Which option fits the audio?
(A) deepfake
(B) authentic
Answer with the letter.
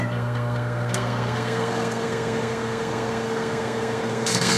A